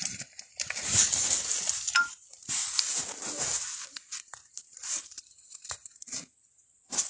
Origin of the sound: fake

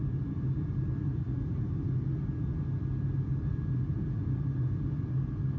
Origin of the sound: real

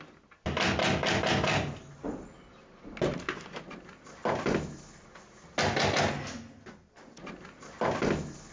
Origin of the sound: real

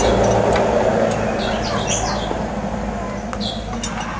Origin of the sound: real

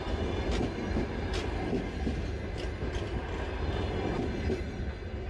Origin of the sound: real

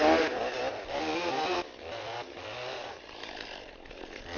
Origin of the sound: real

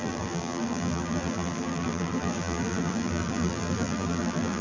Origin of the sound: fake